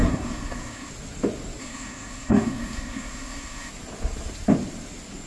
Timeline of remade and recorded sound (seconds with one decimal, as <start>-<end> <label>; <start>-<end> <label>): 0.0-0.9 remade; 0.9-1.6 recorded; 1.6-3.7 remade; 3.7-5.3 recorded